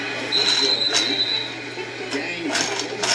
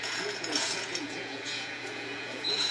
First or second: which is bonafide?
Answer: first